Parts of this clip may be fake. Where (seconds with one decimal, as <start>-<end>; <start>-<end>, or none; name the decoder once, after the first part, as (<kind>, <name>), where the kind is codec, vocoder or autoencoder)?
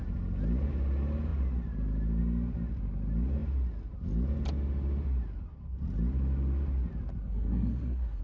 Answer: 7.2-8.2 (codec, SNAC)